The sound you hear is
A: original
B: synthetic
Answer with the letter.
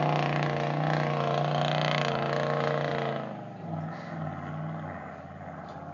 A